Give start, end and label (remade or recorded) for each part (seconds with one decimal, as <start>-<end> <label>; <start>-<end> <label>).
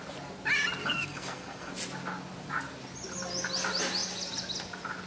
0.0-0.8 recorded; 0.8-1.7 remade; 1.7-5.1 recorded